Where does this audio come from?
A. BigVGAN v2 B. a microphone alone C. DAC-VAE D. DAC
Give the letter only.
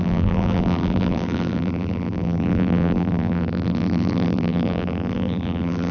A